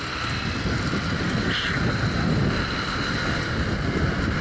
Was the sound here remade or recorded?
recorded